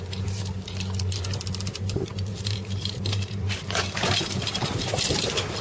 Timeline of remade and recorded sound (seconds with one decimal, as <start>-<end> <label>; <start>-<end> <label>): 0.0-5.6 remade